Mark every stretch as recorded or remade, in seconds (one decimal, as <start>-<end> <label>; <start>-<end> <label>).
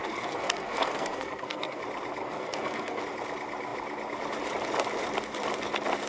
0.0-1.8 remade; 1.8-2.2 recorded; 2.2-3.0 remade; 3.0-6.1 recorded